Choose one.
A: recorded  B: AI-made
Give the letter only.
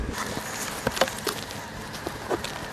A